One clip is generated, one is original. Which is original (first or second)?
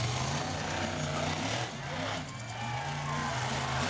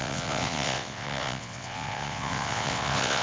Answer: first